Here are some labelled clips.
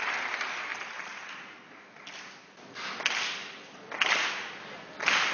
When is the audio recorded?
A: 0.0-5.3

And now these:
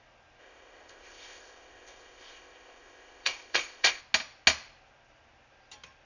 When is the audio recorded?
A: 0.0-0.4; 4.0-6.1